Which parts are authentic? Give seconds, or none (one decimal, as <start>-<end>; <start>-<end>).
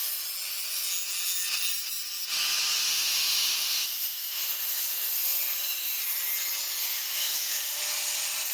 0.0-2.9; 6.0-6.8; 7.8-8.5